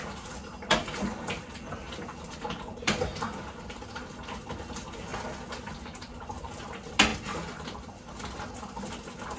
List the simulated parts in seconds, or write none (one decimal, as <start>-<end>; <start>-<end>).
none